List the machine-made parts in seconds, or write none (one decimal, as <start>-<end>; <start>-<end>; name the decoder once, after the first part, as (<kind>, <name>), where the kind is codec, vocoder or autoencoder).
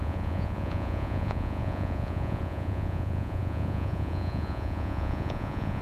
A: 0.0-5.8 (vocoder, Vocos)